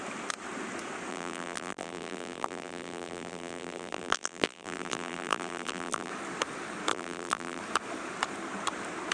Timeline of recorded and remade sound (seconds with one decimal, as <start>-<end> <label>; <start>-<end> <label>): 0.0-1.1 recorded; 1.1-6.1 remade; 6.1-6.9 recorded; 6.9-7.6 remade; 7.6-9.1 recorded